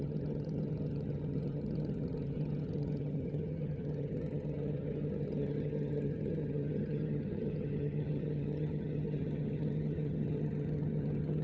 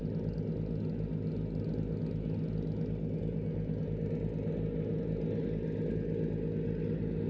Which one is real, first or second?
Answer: second